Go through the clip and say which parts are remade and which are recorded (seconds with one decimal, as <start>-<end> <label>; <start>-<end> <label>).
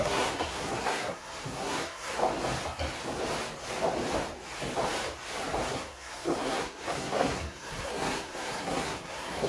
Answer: 0.0-2.2 remade; 2.2-5.7 recorded; 5.7-9.5 remade